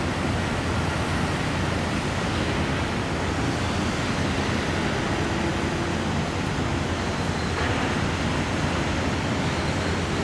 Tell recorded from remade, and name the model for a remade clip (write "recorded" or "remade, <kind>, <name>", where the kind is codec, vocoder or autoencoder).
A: recorded